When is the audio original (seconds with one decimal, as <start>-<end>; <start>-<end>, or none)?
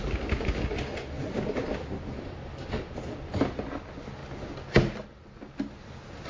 0.0-6.3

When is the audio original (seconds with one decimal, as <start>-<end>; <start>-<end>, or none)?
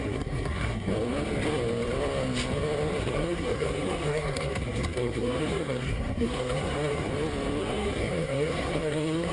0.9-3.0; 7.1-7.6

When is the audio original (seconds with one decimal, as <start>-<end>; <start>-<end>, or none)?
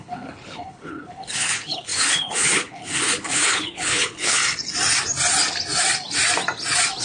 4.4-7.0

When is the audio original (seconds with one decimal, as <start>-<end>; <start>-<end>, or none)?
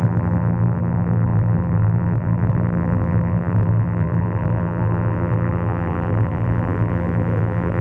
none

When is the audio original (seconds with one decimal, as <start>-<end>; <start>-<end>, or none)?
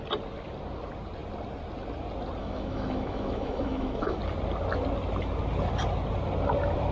0.0-2.4; 4.2-6.9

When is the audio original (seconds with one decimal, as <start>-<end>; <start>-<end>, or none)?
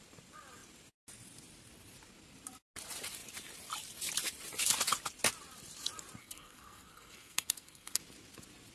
0.0-6.2; 8.0-8.7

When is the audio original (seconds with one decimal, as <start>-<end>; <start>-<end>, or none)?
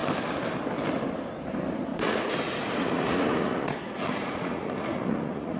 0.0-1.9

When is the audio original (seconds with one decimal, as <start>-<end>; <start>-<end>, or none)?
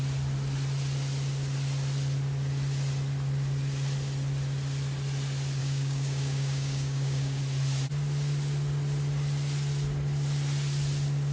0.0-5.6; 7.4-11.3